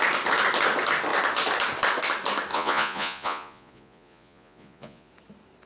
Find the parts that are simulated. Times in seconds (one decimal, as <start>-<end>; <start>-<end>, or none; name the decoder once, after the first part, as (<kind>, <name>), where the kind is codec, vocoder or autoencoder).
2.5-5.1 (vocoder, Vocos)